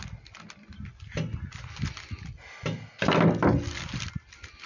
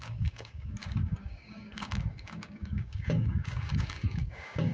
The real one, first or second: first